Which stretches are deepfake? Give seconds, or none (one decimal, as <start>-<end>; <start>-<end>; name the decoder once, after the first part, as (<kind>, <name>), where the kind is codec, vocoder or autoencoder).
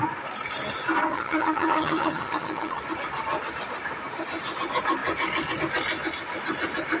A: 1.1-2.8 (vocoder, HiFi-GAN)